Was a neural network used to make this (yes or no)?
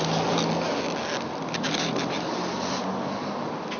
no